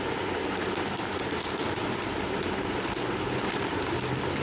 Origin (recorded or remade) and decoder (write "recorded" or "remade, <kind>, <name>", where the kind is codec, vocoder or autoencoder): recorded